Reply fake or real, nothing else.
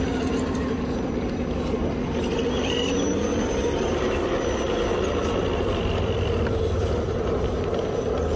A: fake